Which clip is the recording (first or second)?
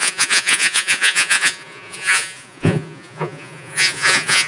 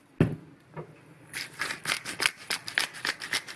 second